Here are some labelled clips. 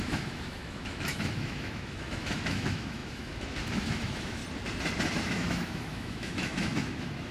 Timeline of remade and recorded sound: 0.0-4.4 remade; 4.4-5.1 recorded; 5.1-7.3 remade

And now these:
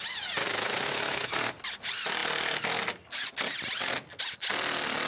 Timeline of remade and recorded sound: 0.0-0.4 recorded; 0.4-1.5 remade; 1.5-5.1 recorded

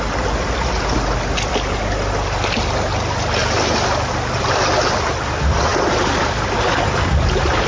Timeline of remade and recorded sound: 0.0-7.7 recorded

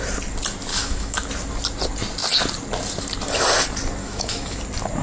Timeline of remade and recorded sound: 0.0-0.7 recorded; 0.7-1.3 remade; 1.3-4.0 recorded; 4.0-4.6 remade; 4.6-5.0 recorded

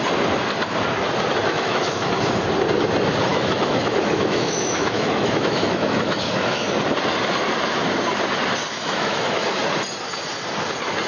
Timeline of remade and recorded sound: 0.0-1.4 recorded; 1.4-2.1 remade; 2.1-3.3 recorded; 3.3-6.7 remade; 6.7-8.7 recorded; 8.7-9.6 remade; 9.6-11.1 recorded